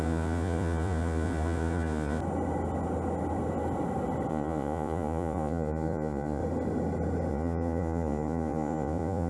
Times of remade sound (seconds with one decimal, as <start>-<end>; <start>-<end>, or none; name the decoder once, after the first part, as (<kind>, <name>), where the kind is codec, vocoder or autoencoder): 0.0-2.2 (vocoder, Vocos); 4.3-6.4; 7.3-9.3